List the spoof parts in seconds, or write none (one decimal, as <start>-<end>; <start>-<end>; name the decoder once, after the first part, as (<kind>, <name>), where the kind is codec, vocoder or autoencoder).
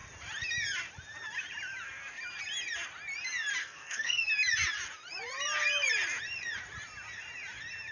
3.6-4.3 (codec, SNAC)